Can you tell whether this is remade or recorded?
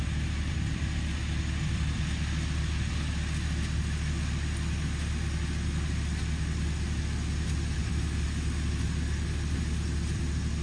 recorded